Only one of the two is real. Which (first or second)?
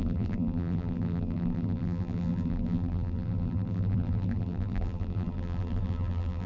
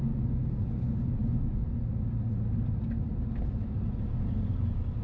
second